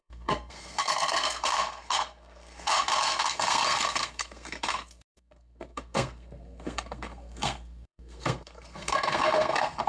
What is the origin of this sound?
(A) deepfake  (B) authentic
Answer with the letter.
A